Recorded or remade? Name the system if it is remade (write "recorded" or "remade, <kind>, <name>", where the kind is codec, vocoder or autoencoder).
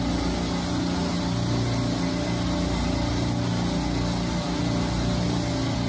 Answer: recorded